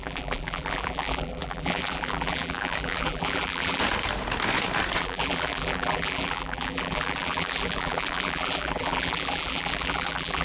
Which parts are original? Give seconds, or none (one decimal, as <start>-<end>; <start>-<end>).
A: 3.8-5.0